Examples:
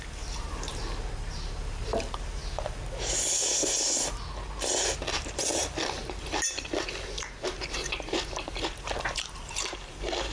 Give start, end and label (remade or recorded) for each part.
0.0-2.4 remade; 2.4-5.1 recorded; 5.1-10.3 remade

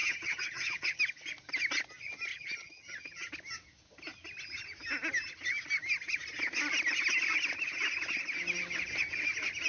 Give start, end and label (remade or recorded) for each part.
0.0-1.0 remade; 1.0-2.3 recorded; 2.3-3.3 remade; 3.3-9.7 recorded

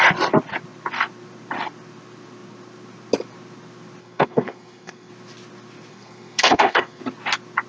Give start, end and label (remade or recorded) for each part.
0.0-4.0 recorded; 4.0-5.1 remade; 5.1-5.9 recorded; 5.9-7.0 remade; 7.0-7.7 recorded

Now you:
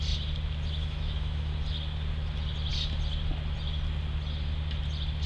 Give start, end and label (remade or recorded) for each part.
0.0-0.8 recorded; 0.8-1.5 remade; 1.5-5.3 recorded